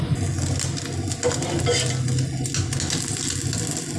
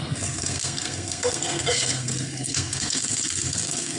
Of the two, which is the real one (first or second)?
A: first